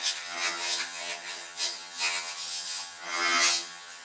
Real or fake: fake